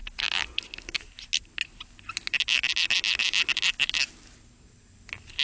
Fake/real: real